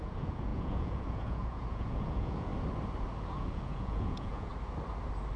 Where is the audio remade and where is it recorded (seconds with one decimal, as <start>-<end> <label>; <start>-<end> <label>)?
0.0-2.5 remade; 2.5-3.3 recorded; 3.3-4.5 remade; 4.5-5.4 recorded